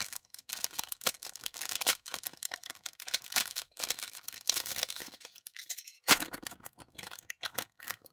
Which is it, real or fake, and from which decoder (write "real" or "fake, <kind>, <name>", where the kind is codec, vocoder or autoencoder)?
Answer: fake, codec, SNAC